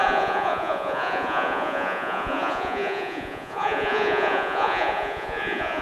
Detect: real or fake fake